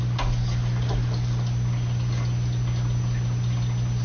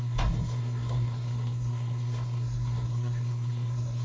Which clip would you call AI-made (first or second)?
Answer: second